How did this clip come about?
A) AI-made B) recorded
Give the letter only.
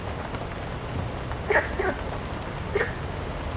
B